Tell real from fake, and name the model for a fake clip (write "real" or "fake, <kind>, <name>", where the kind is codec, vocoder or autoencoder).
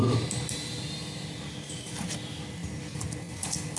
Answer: real